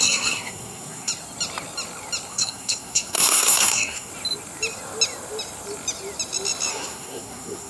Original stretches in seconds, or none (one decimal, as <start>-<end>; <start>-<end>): 1.1-2.3; 4.1-6.7